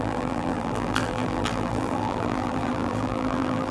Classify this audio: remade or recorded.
remade